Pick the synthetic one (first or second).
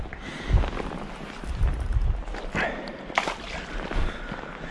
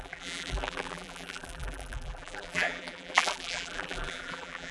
second